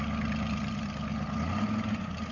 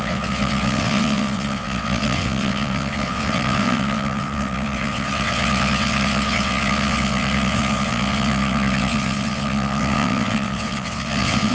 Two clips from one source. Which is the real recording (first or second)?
first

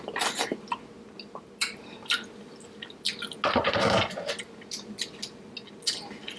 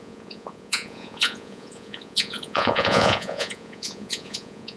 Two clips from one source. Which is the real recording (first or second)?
first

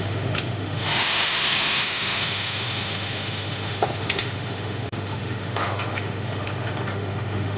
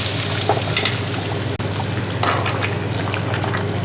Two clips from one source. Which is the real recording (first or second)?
second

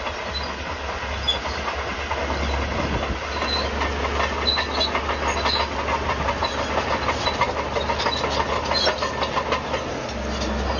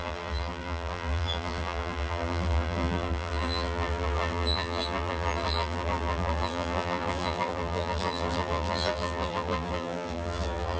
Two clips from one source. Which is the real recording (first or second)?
first